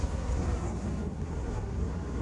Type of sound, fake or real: fake